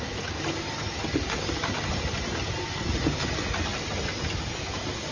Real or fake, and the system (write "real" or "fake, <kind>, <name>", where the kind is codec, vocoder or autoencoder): real